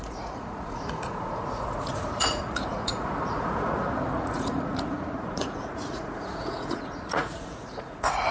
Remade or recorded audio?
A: remade